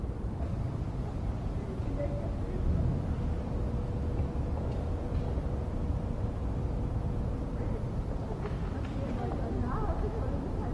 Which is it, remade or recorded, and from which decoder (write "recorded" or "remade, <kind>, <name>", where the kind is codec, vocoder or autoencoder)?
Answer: recorded